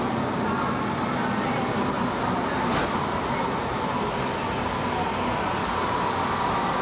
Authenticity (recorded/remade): recorded